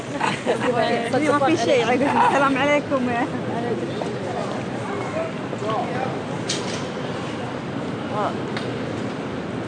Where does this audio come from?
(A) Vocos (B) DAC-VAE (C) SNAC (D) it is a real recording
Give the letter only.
D